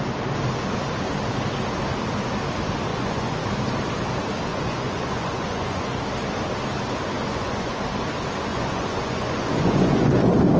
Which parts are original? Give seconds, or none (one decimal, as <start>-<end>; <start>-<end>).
0.0-2.9; 3.4-4.5; 6.0-7.2; 7.8-8.5; 10.1-10.6